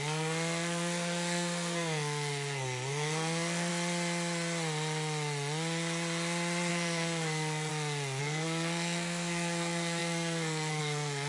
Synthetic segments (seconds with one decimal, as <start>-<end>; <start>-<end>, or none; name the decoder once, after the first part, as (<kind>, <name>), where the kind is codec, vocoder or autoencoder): 0.0-3.7 (codec, SNAC); 6.7-7.7; 8.2-11.3